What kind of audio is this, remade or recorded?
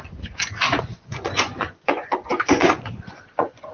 remade